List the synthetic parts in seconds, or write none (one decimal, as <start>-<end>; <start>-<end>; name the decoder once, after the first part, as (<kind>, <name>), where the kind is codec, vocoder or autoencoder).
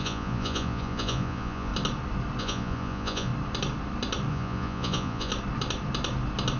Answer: 0.0-1.7 (vocoder, Vocos); 2.4-3.3; 4.3-5.3